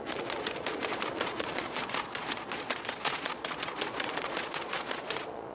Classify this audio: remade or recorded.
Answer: remade